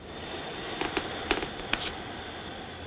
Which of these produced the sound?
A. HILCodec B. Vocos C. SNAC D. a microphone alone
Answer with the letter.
D